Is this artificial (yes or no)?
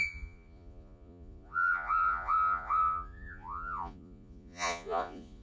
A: yes